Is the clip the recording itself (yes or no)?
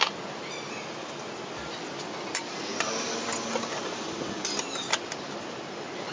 yes